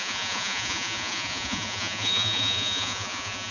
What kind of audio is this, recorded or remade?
remade